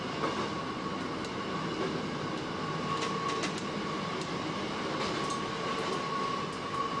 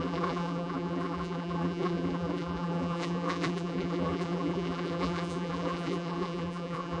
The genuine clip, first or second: first